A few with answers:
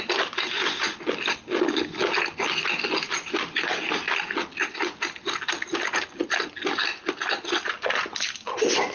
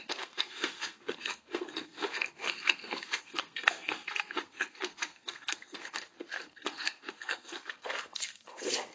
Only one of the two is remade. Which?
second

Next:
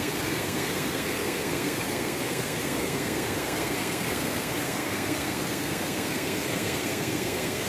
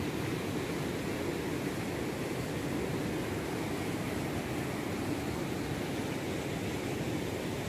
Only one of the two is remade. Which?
first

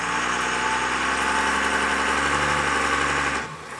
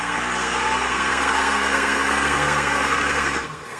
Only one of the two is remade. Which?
second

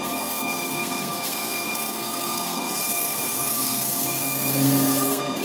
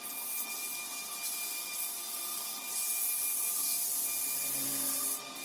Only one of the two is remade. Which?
first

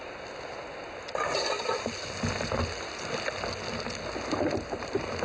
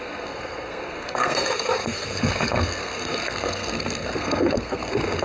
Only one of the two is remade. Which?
second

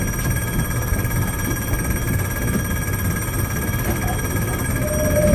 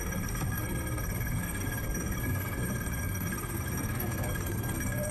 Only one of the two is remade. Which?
second